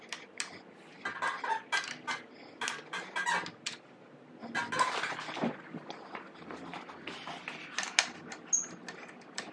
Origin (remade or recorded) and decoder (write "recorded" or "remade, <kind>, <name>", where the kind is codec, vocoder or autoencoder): recorded